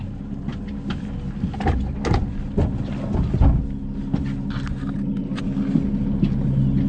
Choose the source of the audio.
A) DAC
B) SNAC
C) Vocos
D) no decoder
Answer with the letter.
D